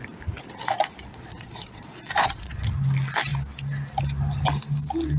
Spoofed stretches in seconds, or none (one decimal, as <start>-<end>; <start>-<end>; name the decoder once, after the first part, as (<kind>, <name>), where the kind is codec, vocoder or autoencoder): 1.1-2.6 (vocoder, Vocos)